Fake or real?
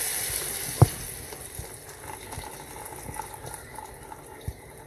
real